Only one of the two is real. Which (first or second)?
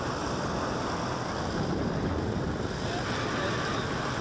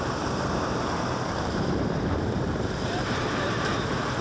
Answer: first